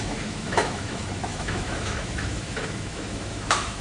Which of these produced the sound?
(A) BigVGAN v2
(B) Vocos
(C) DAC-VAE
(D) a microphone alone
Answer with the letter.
C